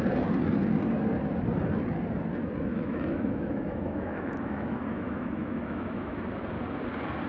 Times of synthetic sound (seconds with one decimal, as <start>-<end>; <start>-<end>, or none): 2.7-6.2